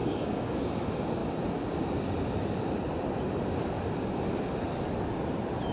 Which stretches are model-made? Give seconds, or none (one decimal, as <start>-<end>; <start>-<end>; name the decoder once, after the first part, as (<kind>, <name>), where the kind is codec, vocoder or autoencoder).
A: 0.0-0.6 (codec, DAC)